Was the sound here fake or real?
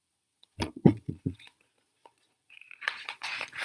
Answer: fake